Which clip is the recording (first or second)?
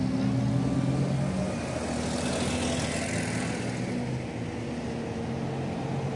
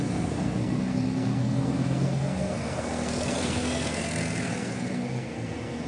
first